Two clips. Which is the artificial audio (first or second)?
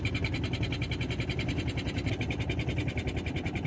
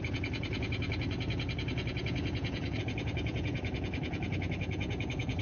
second